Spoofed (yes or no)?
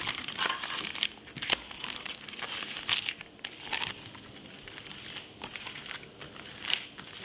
no